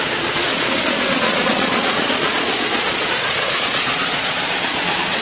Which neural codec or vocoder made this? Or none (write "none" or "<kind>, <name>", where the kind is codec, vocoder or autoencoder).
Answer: vocoder, Vocos